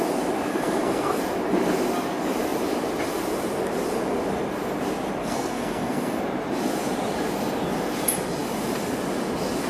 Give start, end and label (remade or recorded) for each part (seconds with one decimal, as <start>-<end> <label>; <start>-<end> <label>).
0.0-0.5 recorded; 0.5-1.2 remade; 1.2-5.2 recorded; 5.2-6.2 remade; 6.2-9.7 recorded